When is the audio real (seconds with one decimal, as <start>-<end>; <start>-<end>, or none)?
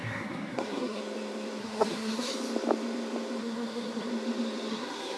1.0-1.6; 2.3-3.4; 4.1-4.7